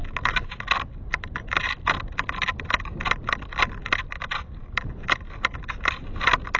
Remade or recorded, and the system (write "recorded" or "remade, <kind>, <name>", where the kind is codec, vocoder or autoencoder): recorded